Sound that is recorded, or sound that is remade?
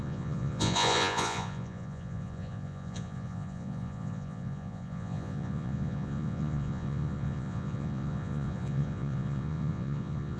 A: remade